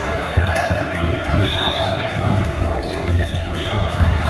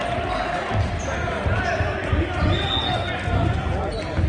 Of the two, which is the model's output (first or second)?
first